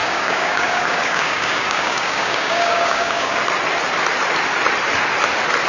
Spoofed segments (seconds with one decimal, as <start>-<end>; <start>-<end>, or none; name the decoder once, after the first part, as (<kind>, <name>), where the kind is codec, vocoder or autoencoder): 0.0-3.4 (codec, DAC)